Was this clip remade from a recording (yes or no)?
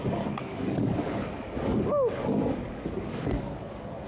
yes